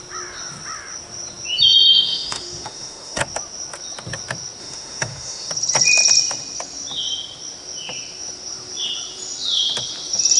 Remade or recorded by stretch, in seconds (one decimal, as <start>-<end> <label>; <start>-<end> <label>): 0.0-1.9 recorded; 1.9-3.2 remade; 3.2-4.6 recorded; 4.6-5.5 remade; 5.5-10.4 recorded